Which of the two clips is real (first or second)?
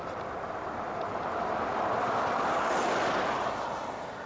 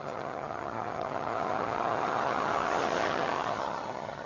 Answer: first